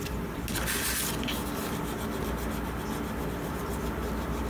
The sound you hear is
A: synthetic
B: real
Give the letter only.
B